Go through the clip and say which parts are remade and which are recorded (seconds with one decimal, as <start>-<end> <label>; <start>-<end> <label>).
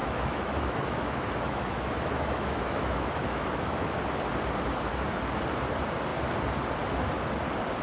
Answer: 0.0-4.0 remade; 4.0-7.8 recorded